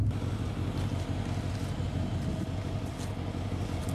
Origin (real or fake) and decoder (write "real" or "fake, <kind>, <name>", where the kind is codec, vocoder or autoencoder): real